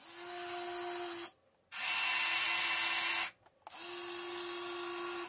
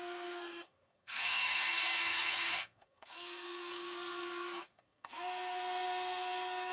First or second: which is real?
first